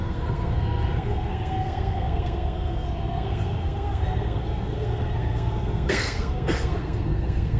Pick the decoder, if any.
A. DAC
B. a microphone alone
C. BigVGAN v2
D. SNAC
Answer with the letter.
D